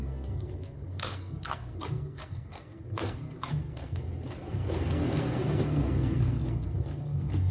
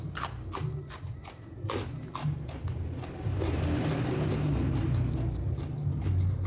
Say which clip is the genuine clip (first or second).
second